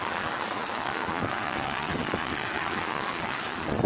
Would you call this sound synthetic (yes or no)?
yes